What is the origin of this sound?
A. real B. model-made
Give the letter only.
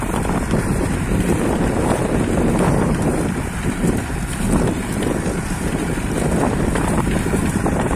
B